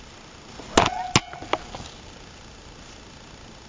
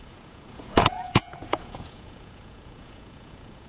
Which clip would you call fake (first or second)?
second